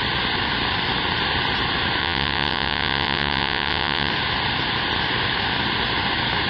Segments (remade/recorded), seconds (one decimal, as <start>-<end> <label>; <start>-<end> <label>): 0.0-2.0 recorded; 2.0-4.1 remade; 4.1-6.5 recorded